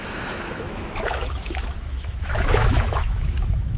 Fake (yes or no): yes